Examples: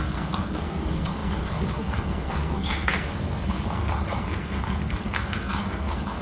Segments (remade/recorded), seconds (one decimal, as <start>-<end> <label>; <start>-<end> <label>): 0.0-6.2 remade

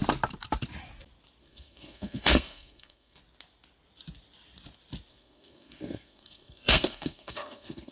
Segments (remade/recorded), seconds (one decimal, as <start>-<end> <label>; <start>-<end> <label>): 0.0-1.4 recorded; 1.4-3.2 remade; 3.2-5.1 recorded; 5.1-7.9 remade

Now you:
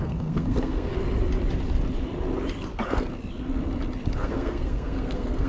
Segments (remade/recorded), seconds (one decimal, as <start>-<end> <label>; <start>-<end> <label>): 0.0-0.9 remade; 0.9-4.2 recorded; 4.2-5.5 remade

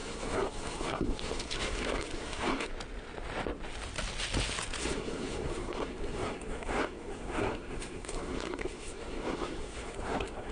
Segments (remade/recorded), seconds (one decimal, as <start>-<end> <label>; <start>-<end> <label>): 0.0-2.7 remade; 2.7-4.8 recorded; 4.8-10.5 remade